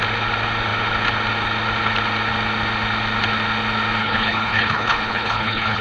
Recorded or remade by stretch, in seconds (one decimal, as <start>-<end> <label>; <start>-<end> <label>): 0.0-4.0 recorded; 4.0-5.8 remade

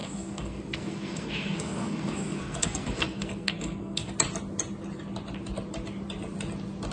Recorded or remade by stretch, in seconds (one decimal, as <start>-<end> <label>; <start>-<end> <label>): 0.0-4.1 remade; 4.1-6.9 recorded